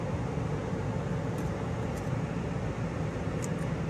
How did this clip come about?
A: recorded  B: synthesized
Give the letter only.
A